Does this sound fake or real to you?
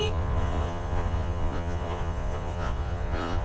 fake